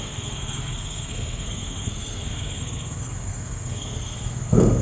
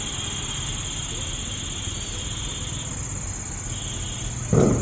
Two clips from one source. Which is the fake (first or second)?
first